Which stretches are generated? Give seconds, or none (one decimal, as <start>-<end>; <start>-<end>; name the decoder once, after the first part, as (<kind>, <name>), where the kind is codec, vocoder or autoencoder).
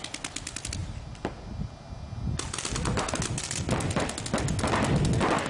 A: none